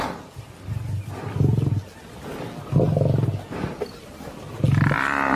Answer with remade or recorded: recorded